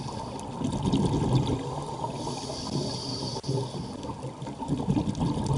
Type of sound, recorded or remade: recorded